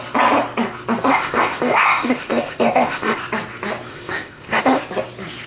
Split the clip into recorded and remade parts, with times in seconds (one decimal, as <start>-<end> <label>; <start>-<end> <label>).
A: 0.0-1.1 recorded; 1.1-3.2 remade; 3.2-3.9 recorded; 3.9-4.8 remade; 4.8-5.5 recorded